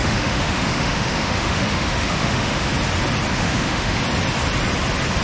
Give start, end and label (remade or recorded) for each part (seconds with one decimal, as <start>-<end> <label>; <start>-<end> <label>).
0.0-2.7 remade; 2.7-3.3 recorded; 3.3-4.0 remade; 4.0-5.2 recorded